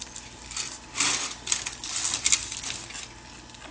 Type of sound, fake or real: real